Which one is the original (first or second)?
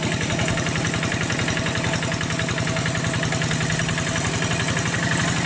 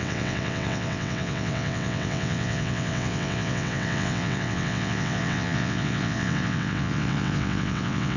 first